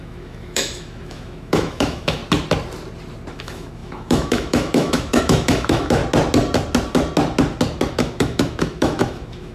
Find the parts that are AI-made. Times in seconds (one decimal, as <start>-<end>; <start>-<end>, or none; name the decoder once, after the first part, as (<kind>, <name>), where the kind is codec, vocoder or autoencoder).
0.0-2.2 (autoencoder, DAC-VAE); 3.3-6.0; 7.9-9.5